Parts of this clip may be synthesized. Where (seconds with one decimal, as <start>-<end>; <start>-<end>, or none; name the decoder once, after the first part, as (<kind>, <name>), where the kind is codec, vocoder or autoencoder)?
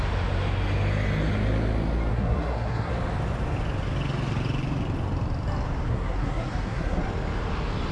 2.1-2.9 (codec, SNAC); 5.9-7.0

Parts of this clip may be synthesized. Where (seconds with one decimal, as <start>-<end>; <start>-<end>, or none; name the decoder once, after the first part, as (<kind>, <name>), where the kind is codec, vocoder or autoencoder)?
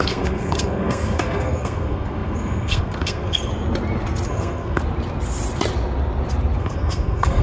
0.0-3.5 (codec, SNAC); 4.3-4.8; 6.6-7.4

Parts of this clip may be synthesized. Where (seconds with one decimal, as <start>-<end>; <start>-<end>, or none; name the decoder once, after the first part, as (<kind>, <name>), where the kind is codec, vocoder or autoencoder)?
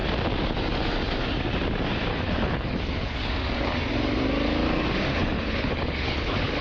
2.1-3.3 (codec, HILCodec); 5.1-6.6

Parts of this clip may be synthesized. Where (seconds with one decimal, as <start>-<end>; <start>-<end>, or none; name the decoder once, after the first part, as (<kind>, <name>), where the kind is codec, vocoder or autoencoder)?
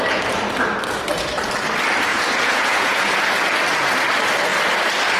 2.1-3.2 (vocoder, Vocos)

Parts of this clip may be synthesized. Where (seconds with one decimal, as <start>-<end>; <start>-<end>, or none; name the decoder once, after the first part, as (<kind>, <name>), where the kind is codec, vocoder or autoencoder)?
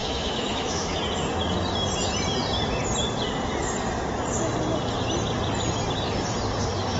0.0-1.0 (autoencoder, DAC-VAE)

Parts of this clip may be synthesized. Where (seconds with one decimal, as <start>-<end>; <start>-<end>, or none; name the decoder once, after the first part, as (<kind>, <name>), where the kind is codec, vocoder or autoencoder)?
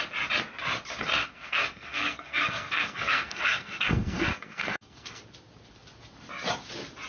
1.2-5.2 (codec, SNAC)